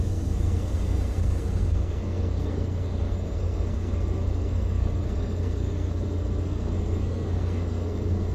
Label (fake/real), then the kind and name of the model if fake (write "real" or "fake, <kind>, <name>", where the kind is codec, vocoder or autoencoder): fake, codec, SNAC